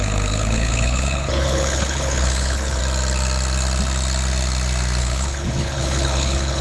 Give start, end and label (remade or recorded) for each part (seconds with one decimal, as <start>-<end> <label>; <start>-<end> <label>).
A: 0.0-2.8 remade; 2.8-5.0 recorded; 5.0-6.6 remade